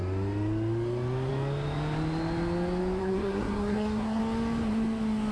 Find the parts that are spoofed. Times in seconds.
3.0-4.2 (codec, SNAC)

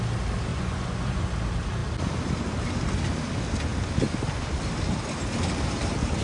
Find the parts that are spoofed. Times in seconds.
0.5-1.2 (vocoder, Vocos)

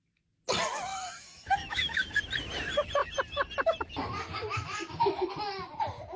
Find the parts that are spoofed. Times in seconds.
0.9-2.2 (autoencoder, DAC-VAE); 4.5-5.3

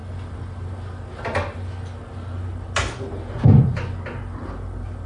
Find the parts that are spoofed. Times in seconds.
none